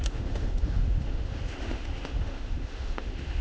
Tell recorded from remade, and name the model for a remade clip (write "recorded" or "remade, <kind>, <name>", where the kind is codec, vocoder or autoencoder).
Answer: remade, autoencoder, DAC-VAE